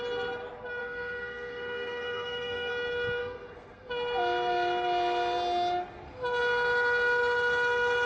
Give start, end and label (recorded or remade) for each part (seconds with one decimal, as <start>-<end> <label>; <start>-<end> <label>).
0.0-0.8 recorded; 0.8-2.7 remade; 2.7-3.2 recorded; 3.2-3.9 remade; 3.9-8.1 recorded